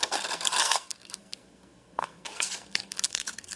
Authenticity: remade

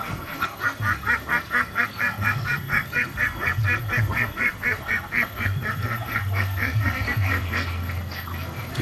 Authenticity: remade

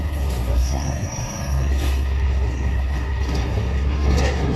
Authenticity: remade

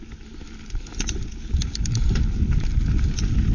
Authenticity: recorded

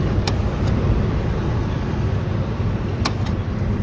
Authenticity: recorded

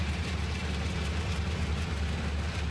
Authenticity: recorded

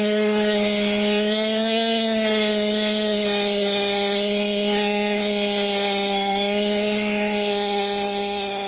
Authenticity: remade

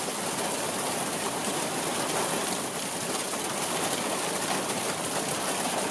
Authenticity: recorded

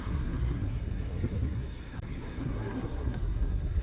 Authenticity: remade